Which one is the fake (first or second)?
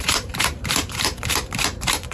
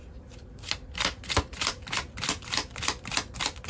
first